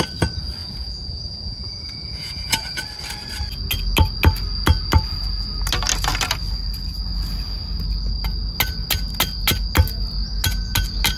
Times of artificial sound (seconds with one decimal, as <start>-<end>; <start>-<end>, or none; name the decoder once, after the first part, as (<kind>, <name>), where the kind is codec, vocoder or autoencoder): 0.6-2.8 (vocoder, Vocos)